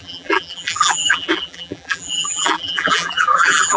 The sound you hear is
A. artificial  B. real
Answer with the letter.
A